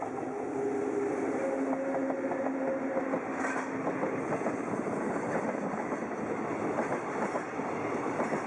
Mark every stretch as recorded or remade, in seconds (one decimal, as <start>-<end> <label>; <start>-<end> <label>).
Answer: 0.0-8.5 recorded